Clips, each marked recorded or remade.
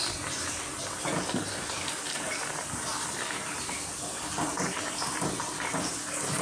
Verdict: recorded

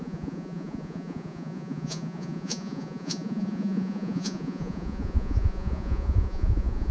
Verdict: remade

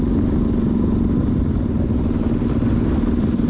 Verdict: recorded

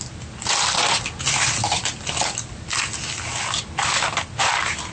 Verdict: recorded